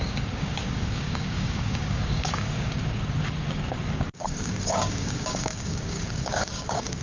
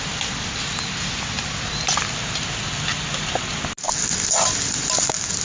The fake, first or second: first